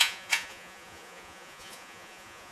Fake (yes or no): yes